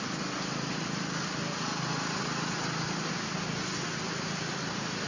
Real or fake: real